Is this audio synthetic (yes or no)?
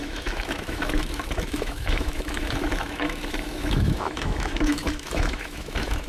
yes